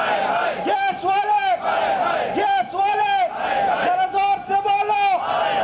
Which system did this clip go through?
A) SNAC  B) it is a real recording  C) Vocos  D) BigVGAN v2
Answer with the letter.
B